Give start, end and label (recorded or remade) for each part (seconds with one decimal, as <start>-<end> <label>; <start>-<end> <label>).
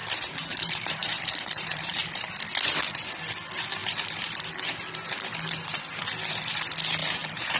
0.0-2.4 remade; 2.4-3.8 recorded; 3.8-5.8 remade; 5.8-7.0 recorded; 7.0-7.6 remade